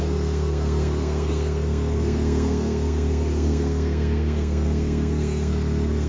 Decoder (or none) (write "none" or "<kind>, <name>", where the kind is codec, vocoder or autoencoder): codec, SNAC